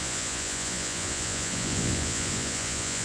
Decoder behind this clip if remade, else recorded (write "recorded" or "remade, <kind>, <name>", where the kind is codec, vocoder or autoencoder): remade, vocoder, Vocos